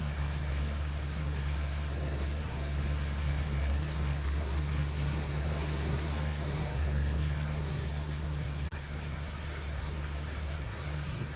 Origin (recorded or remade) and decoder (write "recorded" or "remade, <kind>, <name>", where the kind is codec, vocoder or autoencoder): remade, codec, SNAC